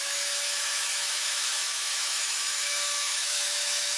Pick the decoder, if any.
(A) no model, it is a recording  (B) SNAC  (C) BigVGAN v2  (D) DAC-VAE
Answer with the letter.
D